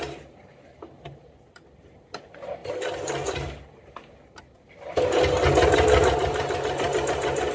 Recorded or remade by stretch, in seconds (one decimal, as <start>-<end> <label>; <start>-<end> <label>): 0.0-7.5 recorded